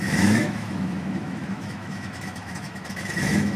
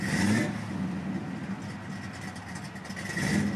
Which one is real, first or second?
second